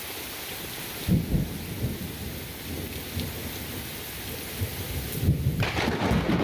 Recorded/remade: recorded